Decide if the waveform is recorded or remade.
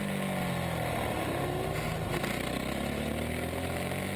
recorded